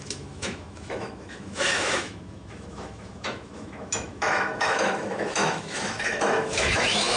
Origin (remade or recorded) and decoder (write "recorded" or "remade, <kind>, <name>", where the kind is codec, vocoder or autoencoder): remade, autoencoder, DAC-VAE